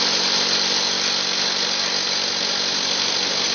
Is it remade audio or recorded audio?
recorded